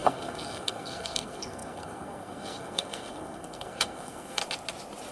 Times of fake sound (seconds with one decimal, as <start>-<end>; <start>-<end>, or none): 0.0-4.4